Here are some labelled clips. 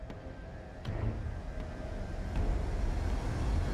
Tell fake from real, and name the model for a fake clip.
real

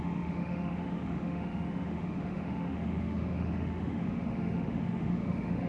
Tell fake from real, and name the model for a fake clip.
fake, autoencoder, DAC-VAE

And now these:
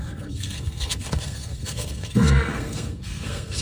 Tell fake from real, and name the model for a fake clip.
fake, codec, SNAC